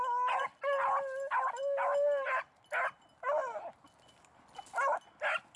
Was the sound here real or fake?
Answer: real